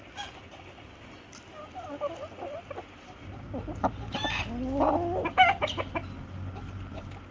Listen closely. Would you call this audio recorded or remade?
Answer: recorded